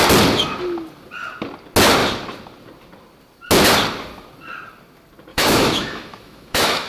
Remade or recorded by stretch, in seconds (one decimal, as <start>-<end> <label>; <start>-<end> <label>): 0.0-5.3 recorded; 5.3-6.9 remade